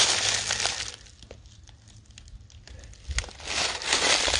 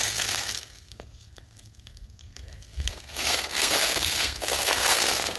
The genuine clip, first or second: first